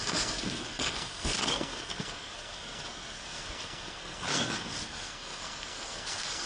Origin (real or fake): fake